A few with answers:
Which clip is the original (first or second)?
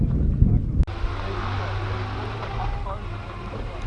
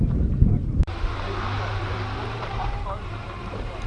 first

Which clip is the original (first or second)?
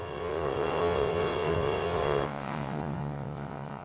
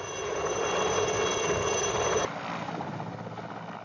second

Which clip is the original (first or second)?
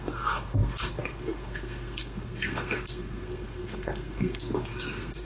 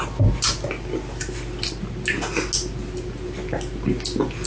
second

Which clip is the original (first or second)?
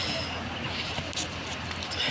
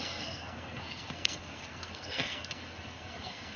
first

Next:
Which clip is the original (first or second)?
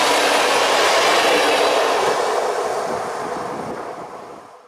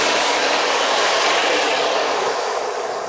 first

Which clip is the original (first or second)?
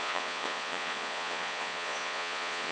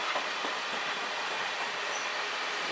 second